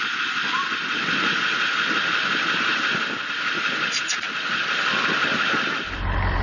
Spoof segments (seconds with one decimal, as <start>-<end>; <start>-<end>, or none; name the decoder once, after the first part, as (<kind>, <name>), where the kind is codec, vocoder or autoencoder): none